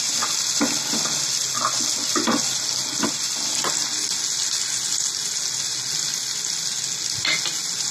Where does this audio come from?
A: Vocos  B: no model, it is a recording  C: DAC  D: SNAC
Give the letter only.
B